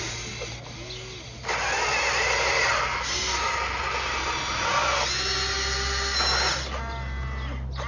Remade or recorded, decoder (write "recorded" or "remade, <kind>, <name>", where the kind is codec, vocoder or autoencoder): recorded